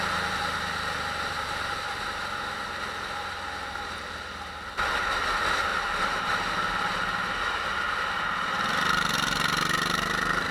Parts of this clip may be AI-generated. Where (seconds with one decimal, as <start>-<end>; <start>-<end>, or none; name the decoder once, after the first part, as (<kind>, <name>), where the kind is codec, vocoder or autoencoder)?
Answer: 5.7-6.3 (vocoder, BigVGAN v2)